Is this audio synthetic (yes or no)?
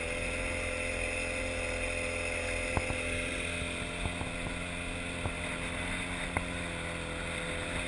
no